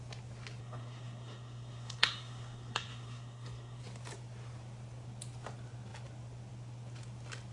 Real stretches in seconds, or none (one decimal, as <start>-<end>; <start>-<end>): 0.0-0.6; 3.8-7.5